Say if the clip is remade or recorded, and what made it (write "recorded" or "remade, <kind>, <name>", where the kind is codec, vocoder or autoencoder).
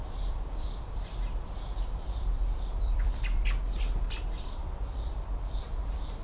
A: remade, vocoder, BigVGAN v2